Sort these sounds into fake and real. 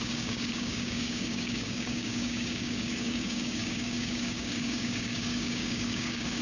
fake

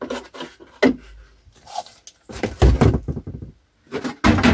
real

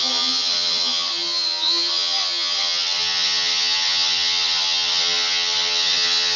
fake